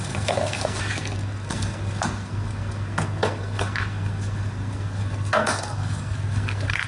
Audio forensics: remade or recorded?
remade